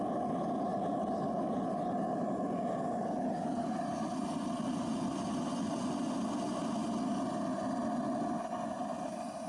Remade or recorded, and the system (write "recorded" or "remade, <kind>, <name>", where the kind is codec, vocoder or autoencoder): recorded